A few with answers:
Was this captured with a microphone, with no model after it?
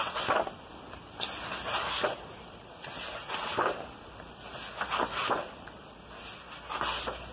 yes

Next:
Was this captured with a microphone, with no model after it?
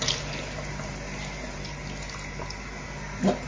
yes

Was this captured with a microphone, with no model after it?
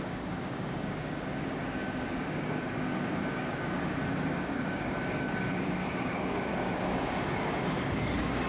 no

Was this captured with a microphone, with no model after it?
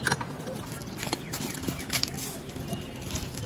yes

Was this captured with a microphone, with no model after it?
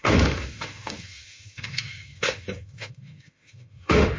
no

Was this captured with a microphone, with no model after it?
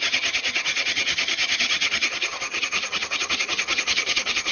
no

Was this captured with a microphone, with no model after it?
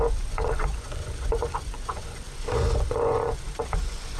no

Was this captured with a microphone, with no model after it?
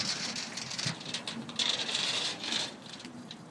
no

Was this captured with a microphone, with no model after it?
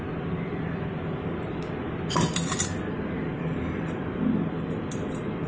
yes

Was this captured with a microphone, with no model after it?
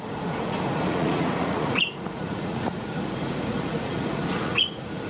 no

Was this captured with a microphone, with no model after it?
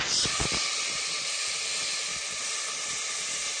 yes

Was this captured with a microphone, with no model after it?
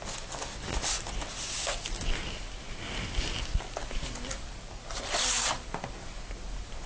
yes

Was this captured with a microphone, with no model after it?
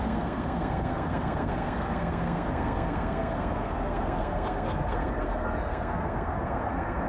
no